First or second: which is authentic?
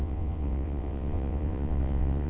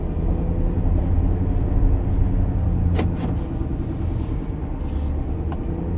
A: second